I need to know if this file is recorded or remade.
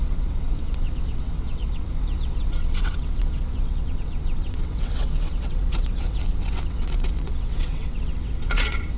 remade